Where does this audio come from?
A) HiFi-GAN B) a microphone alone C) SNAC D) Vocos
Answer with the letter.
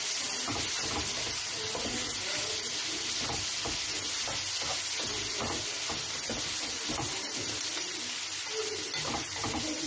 B